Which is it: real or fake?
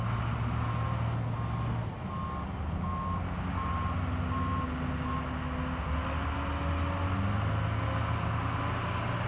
real